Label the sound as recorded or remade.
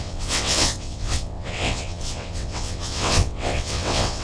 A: remade